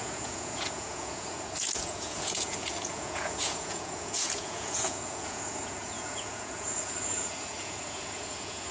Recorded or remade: remade